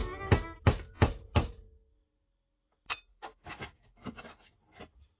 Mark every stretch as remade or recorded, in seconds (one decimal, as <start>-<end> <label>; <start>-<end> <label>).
0.0-3.1 recorded; 3.1-4.5 remade; 4.5-5.2 recorded